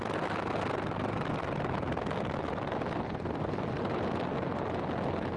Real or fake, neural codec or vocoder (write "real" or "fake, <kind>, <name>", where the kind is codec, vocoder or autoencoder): real